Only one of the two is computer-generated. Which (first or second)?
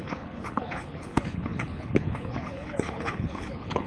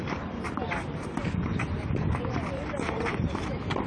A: first